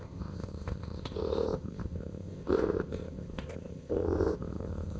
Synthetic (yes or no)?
yes